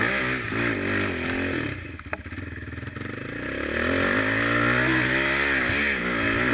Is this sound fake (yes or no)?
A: no